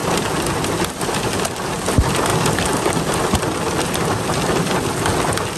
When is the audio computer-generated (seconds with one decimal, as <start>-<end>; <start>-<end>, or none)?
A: none